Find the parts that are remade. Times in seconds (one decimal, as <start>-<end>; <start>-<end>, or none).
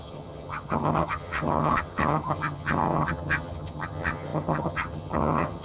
0.0-5.6